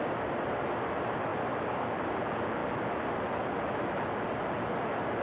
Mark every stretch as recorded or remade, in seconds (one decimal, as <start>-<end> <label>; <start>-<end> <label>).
0.0-5.2 recorded